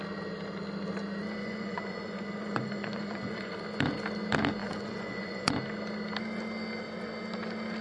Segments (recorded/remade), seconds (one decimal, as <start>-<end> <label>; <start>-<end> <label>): 0.0-1.4 recorded; 1.4-3.5 remade; 3.5-4.6 recorded; 4.6-5.5 remade; 5.5-7.8 recorded

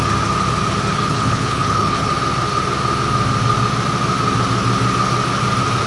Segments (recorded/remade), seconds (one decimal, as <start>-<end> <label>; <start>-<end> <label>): 0.0-0.9 recorded; 0.9-2.1 remade; 2.1-5.9 recorded

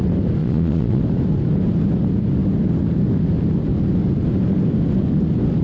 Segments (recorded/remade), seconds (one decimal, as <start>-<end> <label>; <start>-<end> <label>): 0.0-0.4 recorded; 0.4-1.0 remade; 1.0-5.6 recorded

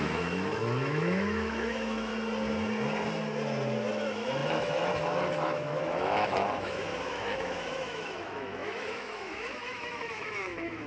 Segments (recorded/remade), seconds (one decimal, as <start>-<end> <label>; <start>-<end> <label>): 0.0-2.1 remade; 2.1-3.9 recorded; 3.9-10.9 remade